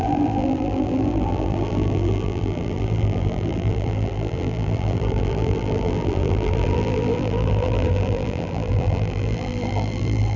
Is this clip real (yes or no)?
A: no